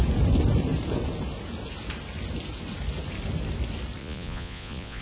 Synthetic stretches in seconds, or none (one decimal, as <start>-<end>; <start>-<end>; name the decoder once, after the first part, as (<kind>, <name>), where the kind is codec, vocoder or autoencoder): 4.0-5.0 (vocoder, Vocos)